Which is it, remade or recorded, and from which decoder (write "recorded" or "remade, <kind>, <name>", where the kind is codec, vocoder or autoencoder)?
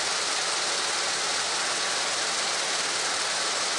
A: recorded